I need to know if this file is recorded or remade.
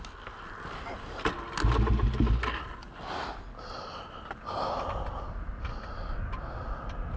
recorded